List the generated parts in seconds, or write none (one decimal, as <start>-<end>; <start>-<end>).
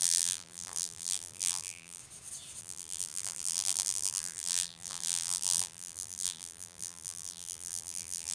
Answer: 0.0-2.0; 2.6-8.3